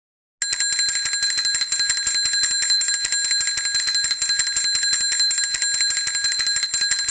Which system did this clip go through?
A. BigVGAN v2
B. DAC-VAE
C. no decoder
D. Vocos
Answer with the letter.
C